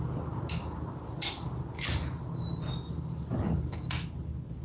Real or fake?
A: real